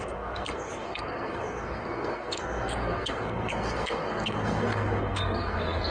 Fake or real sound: fake